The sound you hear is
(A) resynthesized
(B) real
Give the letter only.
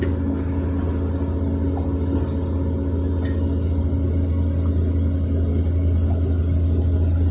B